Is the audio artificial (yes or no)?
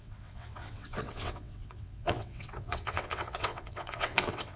yes